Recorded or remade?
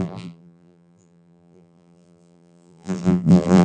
remade